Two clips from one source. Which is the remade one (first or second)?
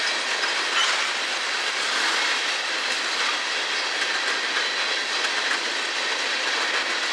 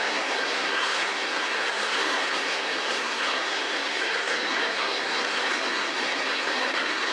second